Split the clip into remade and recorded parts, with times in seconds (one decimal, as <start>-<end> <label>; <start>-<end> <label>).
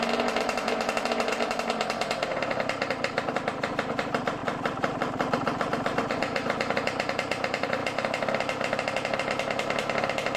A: 0.0-7.8 remade; 7.8-10.4 recorded